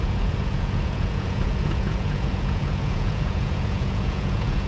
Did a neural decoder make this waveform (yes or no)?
yes